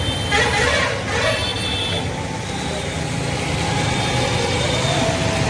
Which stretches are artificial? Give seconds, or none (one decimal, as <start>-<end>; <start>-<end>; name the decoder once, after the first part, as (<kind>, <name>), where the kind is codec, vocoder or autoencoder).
none